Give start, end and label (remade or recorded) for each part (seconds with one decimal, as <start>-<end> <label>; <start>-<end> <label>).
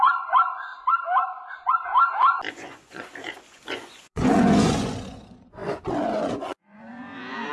0.0-0.7 remade; 0.7-1.5 recorded; 1.5-1.9 remade; 1.9-2.5 recorded; 2.5-7.5 remade